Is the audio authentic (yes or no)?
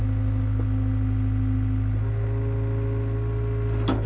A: yes